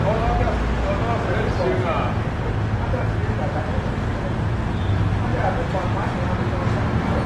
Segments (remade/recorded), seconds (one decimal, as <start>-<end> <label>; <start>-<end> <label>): 0.0-7.3 recorded